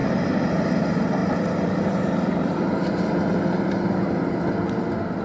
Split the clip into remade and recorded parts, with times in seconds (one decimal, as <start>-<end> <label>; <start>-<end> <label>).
0.0-1.2 recorded; 1.2-4.2 remade; 4.2-5.2 recorded